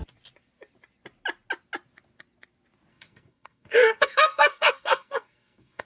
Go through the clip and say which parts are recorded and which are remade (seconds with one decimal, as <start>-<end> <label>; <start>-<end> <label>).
0.0-2.9 recorded; 2.9-5.9 remade